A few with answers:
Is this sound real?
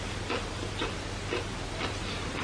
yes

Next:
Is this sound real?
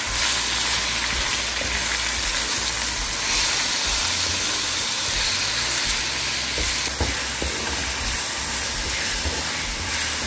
yes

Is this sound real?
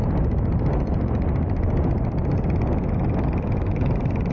yes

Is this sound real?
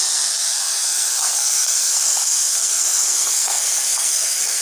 no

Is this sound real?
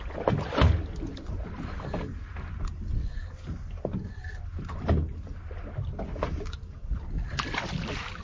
yes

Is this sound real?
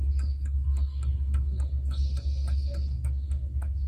no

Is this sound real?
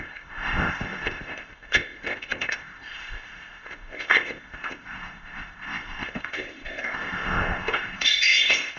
no